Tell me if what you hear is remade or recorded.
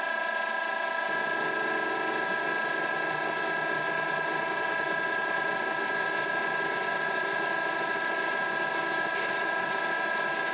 recorded